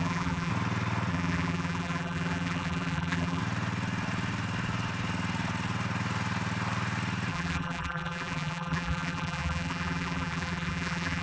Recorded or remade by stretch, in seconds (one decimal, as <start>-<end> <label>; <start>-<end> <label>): 0.0-0.5 remade; 0.5-1.1 recorded; 1.1-3.4 remade; 3.4-7.3 recorded; 7.3-11.2 remade